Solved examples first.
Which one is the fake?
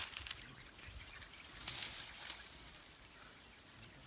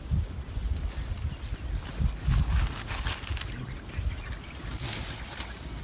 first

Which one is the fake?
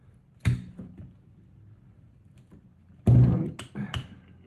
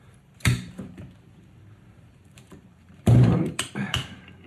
second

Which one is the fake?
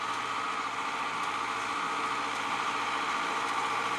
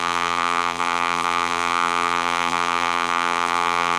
second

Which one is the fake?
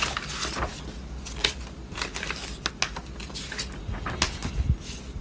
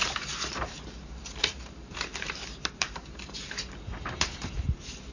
second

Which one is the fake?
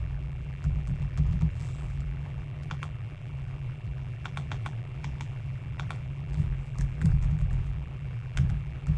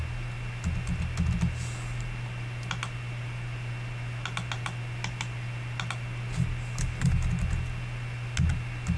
first